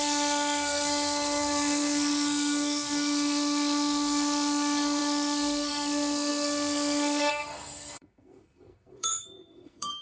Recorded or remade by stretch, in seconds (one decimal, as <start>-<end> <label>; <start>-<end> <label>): 0.0-10.0 remade